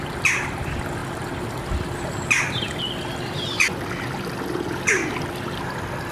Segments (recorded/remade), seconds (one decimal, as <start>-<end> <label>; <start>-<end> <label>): 0.0-6.1 recorded